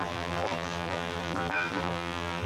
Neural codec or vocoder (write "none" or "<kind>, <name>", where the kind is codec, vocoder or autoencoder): vocoder, BigVGAN v2